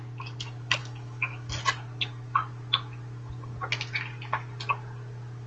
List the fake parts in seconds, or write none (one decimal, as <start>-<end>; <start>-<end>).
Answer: 0.8-1.5